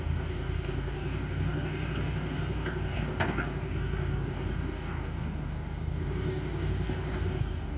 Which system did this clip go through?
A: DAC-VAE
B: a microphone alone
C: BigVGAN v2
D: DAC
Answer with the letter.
D